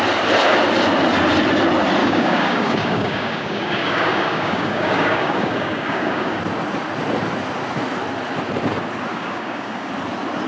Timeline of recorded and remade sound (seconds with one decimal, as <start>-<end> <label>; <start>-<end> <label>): 0.0-2.0 recorded; 2.0-6.4 remade; 6.4-9.1 recorded; 9.1-9.9 remade; 9.9-10.5 recorded